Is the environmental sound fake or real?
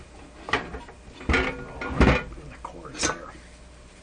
real